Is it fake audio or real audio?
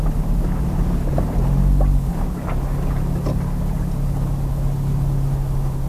real